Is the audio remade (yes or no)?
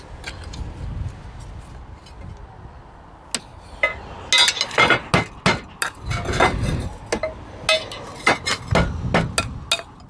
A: no